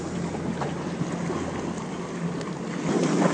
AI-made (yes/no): no